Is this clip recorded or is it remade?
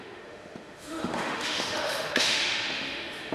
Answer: remade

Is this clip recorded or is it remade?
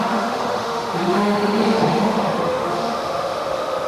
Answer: remade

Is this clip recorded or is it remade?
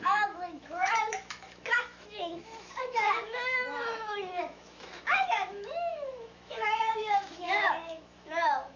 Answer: remade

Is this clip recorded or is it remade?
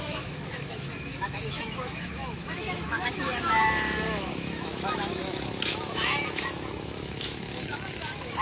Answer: remade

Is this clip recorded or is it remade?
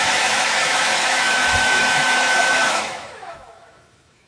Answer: remade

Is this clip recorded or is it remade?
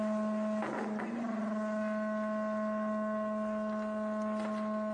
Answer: recorded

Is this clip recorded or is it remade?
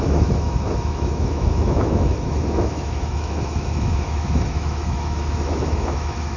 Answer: remade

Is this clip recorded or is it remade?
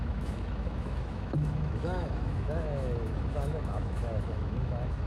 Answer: remade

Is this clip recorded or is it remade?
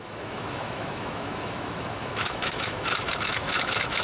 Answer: remade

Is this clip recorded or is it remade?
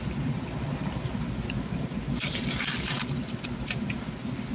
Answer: recorded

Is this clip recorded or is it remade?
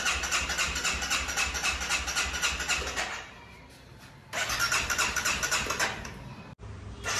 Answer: recorded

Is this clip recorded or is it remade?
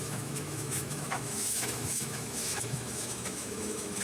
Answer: remade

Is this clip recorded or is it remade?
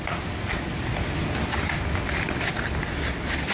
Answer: recorded